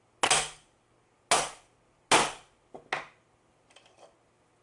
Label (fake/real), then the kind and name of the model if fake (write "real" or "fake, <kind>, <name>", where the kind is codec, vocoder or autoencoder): real